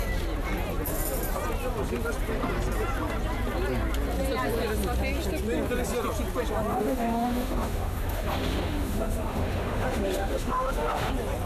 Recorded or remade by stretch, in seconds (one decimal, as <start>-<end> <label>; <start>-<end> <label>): 0.0-6.7 recorded; 6.7-11.1 remade; 11.1-11.5 recorded